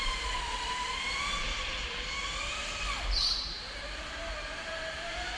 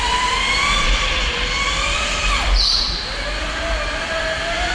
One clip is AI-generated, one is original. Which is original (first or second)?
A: second